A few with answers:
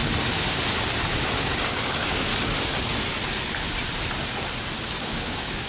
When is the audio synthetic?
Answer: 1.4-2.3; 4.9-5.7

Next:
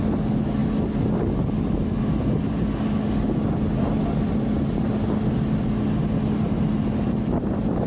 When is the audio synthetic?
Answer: none